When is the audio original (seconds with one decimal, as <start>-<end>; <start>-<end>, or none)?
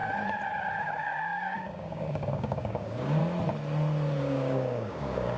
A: 0.0-0.8; 3.2-4.2